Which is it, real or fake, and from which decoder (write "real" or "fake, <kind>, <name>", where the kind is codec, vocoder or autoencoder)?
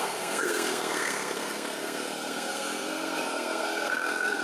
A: fake, codec, SNAC